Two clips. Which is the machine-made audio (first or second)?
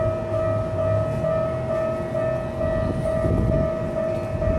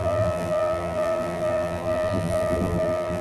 second